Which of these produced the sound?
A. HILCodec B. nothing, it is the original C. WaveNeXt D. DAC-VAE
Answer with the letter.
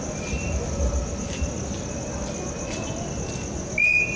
B